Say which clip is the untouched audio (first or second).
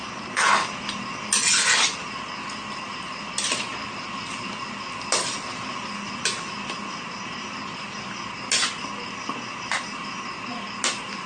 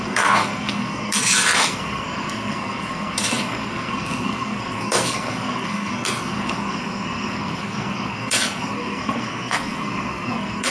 first